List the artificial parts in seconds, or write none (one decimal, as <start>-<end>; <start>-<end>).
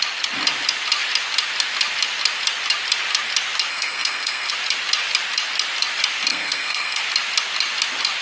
3.7-4.5; 6.3-7.0